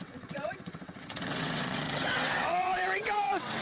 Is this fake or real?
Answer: fake